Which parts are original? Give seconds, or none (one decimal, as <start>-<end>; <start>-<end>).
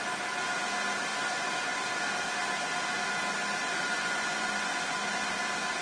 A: 0.0-1.1; 1.8-3.7; 5.3-5.8